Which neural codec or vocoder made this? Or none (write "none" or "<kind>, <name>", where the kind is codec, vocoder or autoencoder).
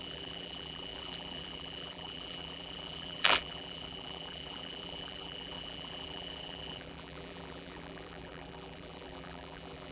vocoder, BigVGAN v2